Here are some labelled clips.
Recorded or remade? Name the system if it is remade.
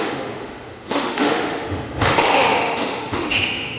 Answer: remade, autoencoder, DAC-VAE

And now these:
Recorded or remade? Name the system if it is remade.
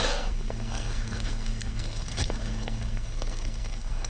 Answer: remade, codec, SNAC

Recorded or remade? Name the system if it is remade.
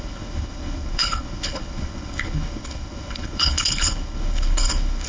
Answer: remade, codec, HILCodec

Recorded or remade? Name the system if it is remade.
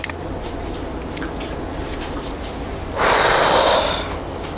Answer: recorded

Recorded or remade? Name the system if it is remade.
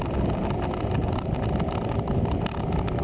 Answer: recorded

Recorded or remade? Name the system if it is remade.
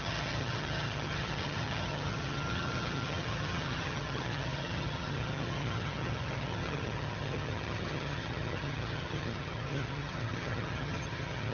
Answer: remade, vocoder, HiFi-GAN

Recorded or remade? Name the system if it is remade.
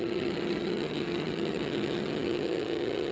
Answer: remade, vocoder, HiFi-GAN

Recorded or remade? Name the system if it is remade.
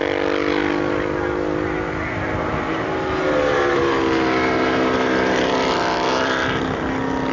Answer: recorded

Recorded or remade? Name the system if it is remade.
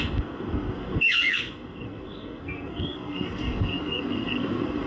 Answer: remade, codec, SNAC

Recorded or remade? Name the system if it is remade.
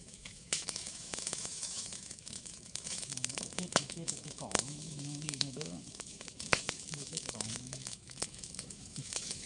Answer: remade, autoencoder, DAC-VAE